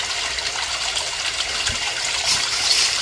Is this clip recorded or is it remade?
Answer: recorded